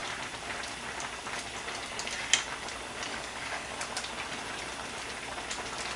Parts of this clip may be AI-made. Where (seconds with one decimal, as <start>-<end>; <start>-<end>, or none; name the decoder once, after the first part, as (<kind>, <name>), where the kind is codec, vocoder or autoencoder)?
3.1-3.7 (codec, DAC)